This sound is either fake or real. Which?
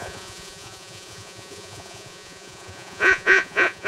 fake